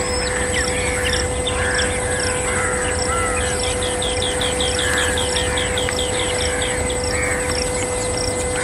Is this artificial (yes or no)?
no